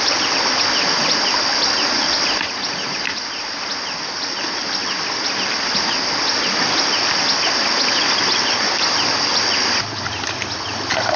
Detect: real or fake real